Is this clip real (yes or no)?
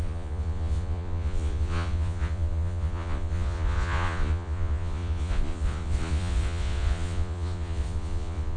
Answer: no